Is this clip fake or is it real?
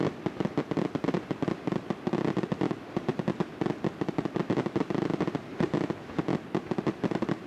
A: real